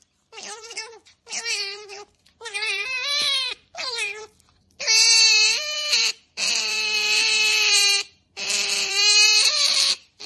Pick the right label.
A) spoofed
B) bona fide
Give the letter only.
A